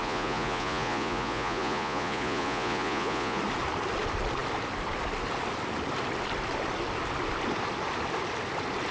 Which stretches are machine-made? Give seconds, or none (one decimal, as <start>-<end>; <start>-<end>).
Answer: 0.0-3.4